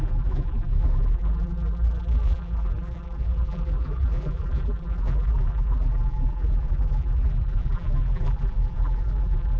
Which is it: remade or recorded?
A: remade